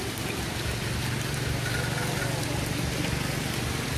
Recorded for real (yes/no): yes